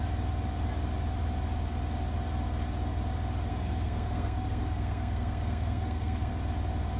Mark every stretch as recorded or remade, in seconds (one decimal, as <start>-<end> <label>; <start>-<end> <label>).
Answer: 0.0-3.5 recorded; 3.5-6.3 remade; 6.3-7.0 recorded